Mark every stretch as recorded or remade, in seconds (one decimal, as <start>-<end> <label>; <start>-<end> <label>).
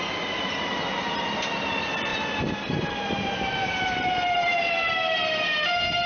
0.0-6.1 recorded